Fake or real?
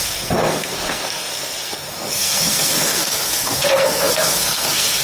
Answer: fake